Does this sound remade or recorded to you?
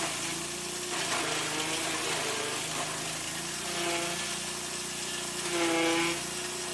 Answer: recorded